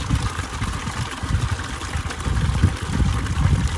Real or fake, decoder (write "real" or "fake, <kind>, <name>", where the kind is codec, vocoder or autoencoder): real